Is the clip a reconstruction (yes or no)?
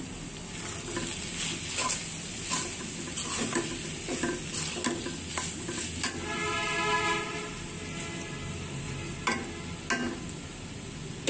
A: no